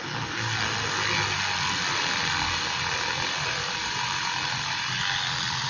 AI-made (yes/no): no